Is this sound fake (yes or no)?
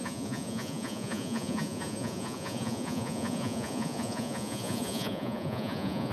yes